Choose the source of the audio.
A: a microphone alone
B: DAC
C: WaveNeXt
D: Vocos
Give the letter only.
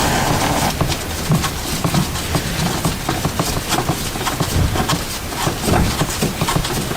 A